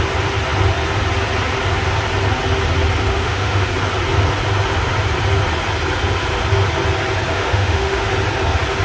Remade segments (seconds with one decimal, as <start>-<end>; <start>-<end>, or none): 3.1-3.7; 7.3-8.1